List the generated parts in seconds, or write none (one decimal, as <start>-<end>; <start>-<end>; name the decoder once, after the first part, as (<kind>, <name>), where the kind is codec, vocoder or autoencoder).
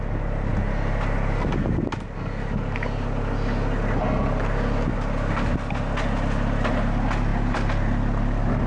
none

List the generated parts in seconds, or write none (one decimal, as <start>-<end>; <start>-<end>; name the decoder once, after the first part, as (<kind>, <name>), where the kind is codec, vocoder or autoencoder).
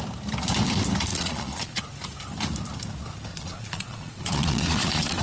1.1-1.8 (vocoder, Vocos); 3.3-5.2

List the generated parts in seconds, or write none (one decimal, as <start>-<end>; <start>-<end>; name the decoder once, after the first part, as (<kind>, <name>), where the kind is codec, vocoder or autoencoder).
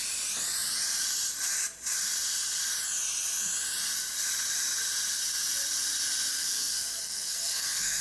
6.3-8.0 (codec, SNAC)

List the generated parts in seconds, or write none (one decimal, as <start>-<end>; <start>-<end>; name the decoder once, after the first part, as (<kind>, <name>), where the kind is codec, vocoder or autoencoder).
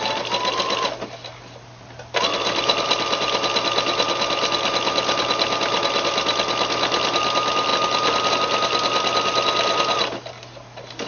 none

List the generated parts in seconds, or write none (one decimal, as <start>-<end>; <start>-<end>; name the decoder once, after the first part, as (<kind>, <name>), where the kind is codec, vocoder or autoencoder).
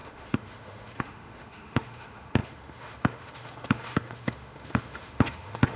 0.0-5.8 (autoencoder, DAC-VAE)